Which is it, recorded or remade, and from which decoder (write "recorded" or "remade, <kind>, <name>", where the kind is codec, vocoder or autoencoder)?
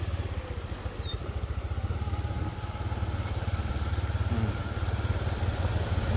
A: recorded